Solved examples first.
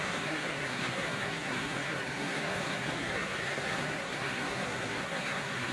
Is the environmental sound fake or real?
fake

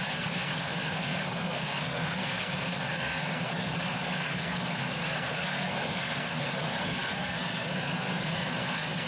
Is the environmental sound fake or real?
fake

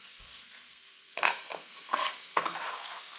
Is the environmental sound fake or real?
fake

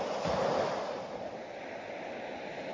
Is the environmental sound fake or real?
real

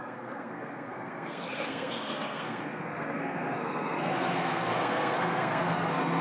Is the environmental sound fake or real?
fake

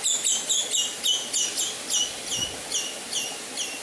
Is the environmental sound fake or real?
real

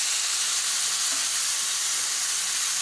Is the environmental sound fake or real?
real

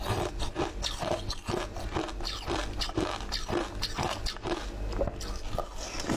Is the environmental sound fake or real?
real